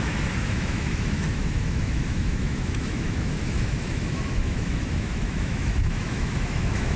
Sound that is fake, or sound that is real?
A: fake